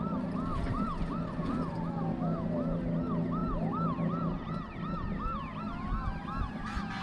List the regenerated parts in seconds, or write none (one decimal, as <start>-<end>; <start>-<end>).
0.5-1.7